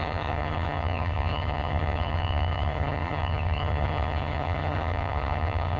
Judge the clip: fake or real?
fake